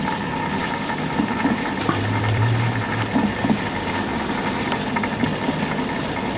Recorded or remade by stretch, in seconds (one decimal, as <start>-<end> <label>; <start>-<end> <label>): 0.0-0.6 recorded; 0.6-3.4 remade; 3.4-6.4 recorded